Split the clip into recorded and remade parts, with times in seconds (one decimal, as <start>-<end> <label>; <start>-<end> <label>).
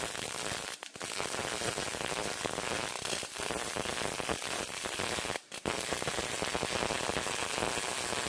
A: 0.0-2.2 recorded; 2.2-5.9 remade; 5.9-8.3 recorded